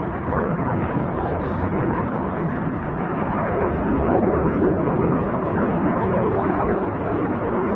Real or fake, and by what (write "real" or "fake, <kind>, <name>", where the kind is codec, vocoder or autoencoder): fake, codec, HILCodec